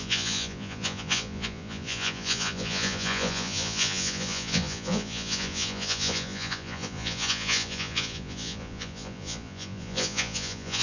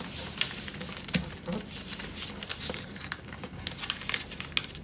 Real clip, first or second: second